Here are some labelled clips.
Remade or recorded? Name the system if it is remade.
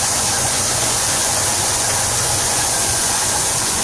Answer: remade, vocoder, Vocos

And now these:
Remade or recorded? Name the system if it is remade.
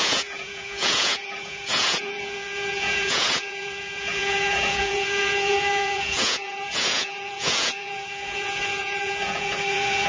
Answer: remade, vocoder, Vocos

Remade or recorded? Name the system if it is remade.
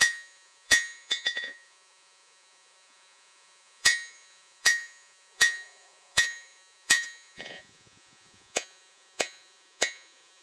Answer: remade, vocoder, Vocos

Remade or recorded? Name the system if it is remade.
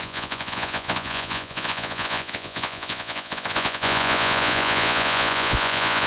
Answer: remade, vocoder, Vocos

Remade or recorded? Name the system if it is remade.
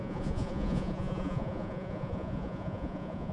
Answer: remade, vocoder, Vocos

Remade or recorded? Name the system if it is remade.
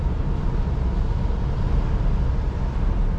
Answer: recorded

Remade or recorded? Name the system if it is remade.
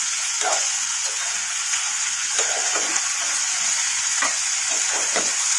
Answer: remade, vocoder, Vocos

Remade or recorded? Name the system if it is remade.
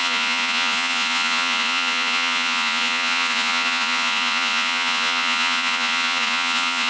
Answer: remade, vocoder, Vocos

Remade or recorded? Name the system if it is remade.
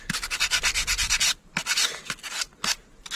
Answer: recorded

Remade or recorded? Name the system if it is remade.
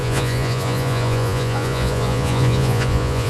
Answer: remade, vocoder, Vocos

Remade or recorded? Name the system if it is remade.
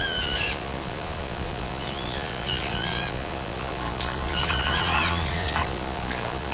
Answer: remade, vocoder, Vocos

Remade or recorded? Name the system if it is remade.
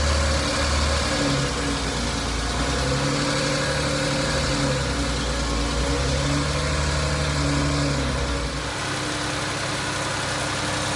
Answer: recorded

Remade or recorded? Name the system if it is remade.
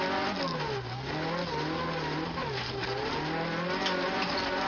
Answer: recorded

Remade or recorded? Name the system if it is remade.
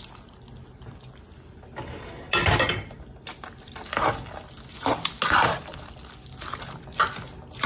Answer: recorded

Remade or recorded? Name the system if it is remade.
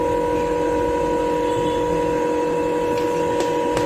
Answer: recorded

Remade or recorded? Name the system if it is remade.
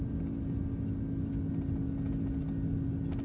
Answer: recorded